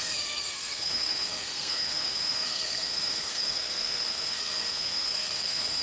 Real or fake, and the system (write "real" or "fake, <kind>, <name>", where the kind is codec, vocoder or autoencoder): fake, codec, SNAC